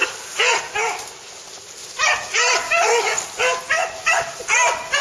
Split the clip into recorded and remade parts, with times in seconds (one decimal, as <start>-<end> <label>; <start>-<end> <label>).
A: 0.0-5.0 recorded